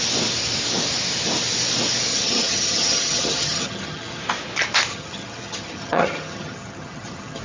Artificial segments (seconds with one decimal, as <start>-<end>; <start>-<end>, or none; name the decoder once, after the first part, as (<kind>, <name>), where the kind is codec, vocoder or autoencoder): 2.1-4.2 (vocoder, HiFi-GAN); 4.9-7.4